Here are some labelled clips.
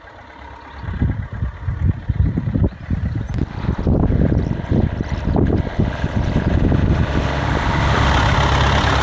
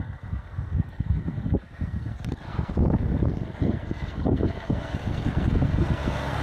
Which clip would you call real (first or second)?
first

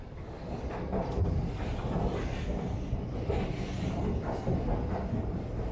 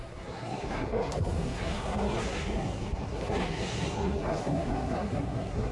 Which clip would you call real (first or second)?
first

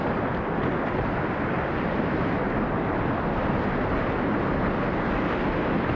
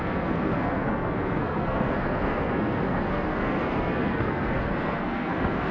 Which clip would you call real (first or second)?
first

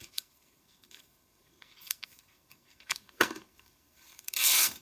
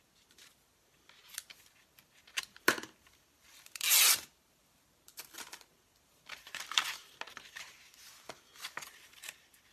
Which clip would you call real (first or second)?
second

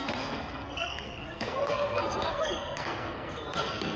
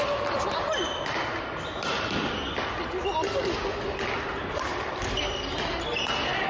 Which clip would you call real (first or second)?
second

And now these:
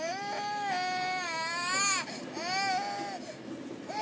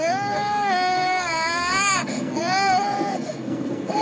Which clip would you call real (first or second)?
first